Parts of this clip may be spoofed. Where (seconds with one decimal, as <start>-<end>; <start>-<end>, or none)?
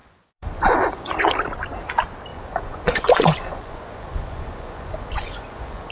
0.0-1.3; 2.3-5.9